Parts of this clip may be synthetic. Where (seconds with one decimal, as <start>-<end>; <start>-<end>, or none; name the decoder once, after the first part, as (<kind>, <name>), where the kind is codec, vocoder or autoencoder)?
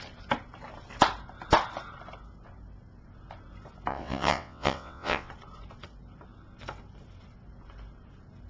3.9-5.3 (vocoder, WaveNeXt)